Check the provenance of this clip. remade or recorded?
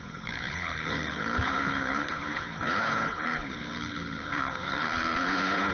remade